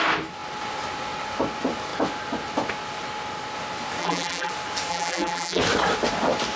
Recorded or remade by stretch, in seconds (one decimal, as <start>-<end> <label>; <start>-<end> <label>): 0.0-4.0 recorded; 4.0-4.5 remade; 4.5-4.9 recorded; 4.9-5.6 remade; 5.6-6.6 recorded